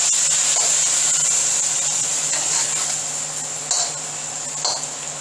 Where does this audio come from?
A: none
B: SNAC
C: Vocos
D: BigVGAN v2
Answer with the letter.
A